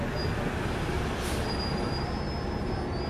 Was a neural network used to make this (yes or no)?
no